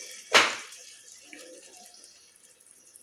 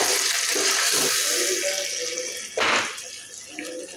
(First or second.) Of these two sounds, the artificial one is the first